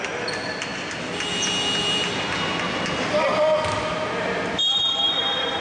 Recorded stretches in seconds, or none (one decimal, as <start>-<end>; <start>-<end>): 0.0-1.8; 2.5-4.6